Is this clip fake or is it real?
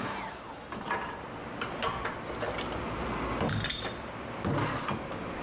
real